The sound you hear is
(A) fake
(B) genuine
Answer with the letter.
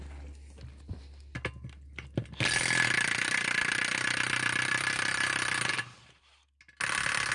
B